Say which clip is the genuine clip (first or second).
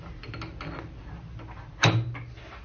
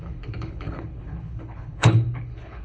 first